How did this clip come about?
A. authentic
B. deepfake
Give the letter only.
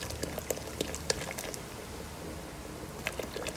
A